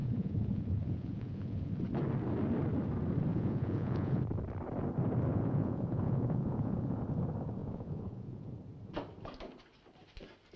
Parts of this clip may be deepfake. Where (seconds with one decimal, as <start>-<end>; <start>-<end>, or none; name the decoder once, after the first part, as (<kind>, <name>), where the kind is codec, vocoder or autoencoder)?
0.0-1.7 (vocoder, Vocos); 3.3-4.2; 5.3-7.0; 7.6-8.5